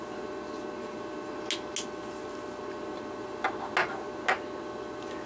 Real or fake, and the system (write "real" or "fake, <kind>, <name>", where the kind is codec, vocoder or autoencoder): real